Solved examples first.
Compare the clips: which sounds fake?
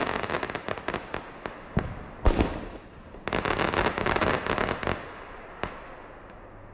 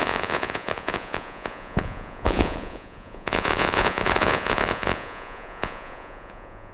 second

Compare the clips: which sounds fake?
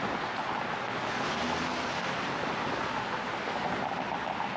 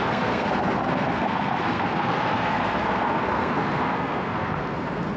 second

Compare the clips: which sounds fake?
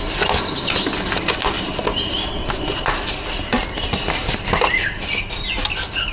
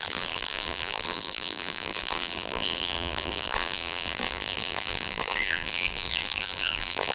second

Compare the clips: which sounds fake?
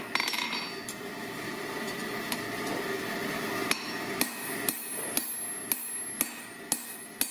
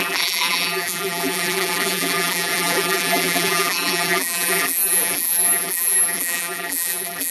second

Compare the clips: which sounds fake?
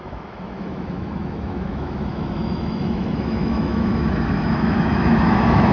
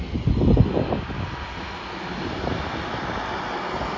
first